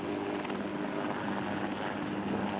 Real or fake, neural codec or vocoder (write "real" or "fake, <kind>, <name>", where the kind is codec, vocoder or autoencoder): real